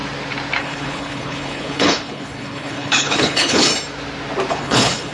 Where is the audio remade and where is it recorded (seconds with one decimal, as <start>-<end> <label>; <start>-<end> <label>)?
0.0-0.6 recorded; 0.6-3.7 remade; 3.7-4.5 recorded; 4.5-5.1 remade